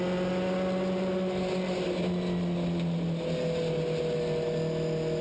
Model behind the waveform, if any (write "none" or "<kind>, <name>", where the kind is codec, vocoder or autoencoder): none